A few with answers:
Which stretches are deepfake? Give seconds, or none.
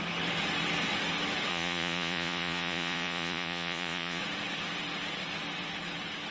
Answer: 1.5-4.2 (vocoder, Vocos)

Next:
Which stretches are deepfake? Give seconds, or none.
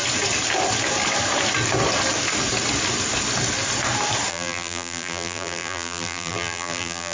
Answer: 4.3-7.1 (vocoder, BigVGAN v2)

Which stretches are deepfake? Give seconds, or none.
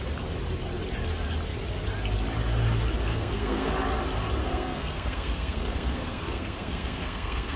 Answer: 3.1-3.7 (codec, SNAC); 4.4-7.6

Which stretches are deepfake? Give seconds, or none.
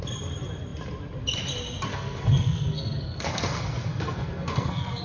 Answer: 1.9-5.0 (codec, SNAC)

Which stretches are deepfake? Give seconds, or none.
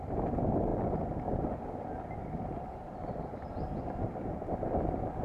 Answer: 0.7-3.8 (vocoder, BigVGAN v2)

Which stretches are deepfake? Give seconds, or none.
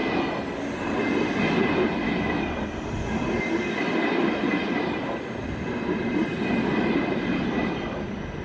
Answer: none